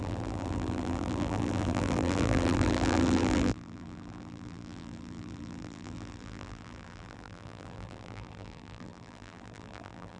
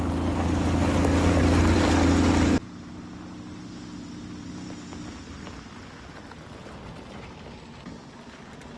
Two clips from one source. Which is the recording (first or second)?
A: second